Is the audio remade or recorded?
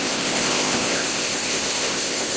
remade